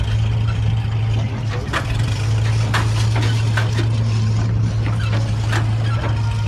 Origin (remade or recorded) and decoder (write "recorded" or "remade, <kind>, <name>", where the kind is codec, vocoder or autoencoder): recorded